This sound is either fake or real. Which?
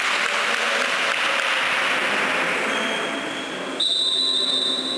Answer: real